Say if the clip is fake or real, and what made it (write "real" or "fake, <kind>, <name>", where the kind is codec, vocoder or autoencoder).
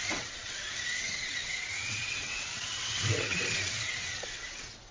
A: fake, vocoder, WaveNeXt